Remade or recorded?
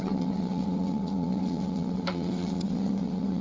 remade